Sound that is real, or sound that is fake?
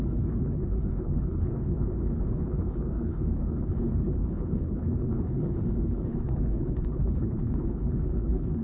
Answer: fake